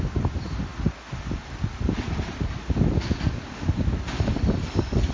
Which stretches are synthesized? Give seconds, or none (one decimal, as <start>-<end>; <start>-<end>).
none